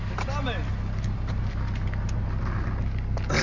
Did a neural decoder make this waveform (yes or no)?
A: no